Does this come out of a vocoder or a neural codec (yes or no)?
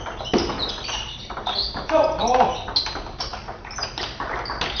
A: no